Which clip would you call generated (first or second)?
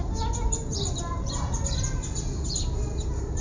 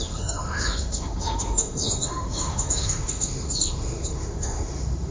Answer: second